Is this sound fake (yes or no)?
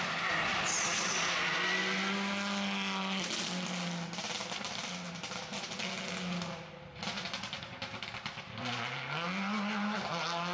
no